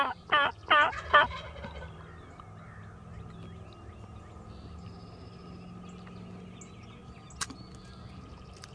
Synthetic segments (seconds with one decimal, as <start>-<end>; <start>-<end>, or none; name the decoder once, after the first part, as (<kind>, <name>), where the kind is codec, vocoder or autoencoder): none